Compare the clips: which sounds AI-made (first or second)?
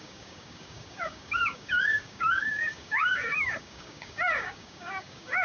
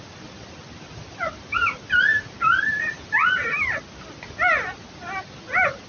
first